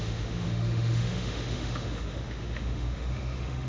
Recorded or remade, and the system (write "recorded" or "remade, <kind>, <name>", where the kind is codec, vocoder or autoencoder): remade, autoencoder, DAC-VAE